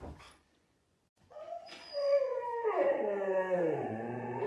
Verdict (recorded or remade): remade